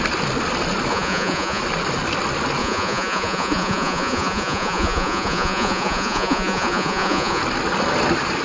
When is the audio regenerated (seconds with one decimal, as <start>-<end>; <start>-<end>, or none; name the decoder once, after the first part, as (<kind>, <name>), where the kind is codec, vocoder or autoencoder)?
0.9-1.6 (vocoder, Vocos); 2.6-7.4